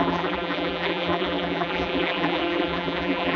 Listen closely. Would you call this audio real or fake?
fake